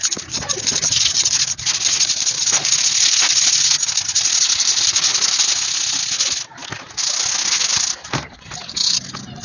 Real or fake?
real